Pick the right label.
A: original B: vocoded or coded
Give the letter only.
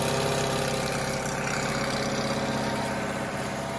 A